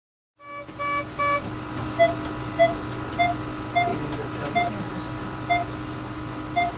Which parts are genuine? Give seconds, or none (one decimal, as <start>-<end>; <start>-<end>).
0.0-1.2; 3.9-4.9